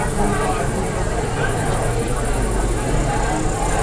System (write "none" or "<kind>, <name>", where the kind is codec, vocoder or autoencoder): none